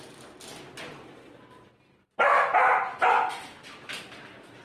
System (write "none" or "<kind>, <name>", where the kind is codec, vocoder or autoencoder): none